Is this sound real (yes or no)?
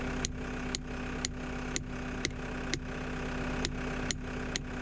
yes